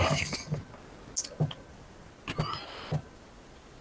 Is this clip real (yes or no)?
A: yes